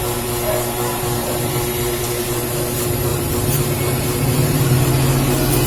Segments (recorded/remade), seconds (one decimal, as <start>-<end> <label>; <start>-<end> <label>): 0.0-3.1 recorded; 3.1-4.9 remade; 4.9-5.7 recorded

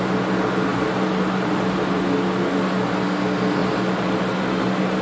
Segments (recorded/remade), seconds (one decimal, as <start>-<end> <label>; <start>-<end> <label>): 0.0-5.0 recorded

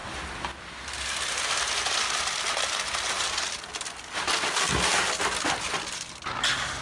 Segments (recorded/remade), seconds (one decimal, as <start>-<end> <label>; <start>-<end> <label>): 0.0-6.8 recorded

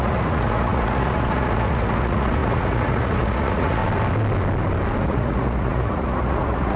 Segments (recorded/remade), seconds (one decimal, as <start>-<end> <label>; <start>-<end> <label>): 0.0-3.8 remade; 3.8-5.0 recorded; 5.0-6.8 remade

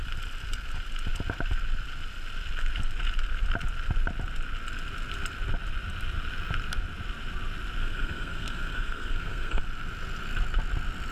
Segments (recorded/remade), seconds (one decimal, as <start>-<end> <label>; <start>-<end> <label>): 0.0-7.8 recorded; 7.8-9.6 remade; 9.6-11.1 recorded